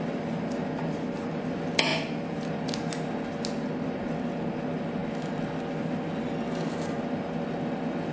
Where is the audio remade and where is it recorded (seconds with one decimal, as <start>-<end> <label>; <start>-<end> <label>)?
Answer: 0.0-8.1 recorded